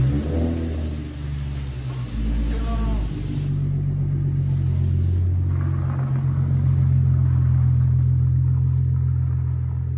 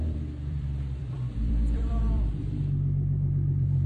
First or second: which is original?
first